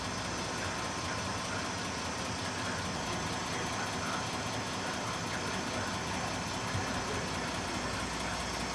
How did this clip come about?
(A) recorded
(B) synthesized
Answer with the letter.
A